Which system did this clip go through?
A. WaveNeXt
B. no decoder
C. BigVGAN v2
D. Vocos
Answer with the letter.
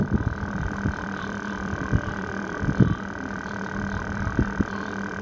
C